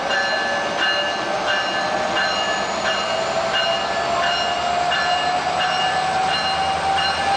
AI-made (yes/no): no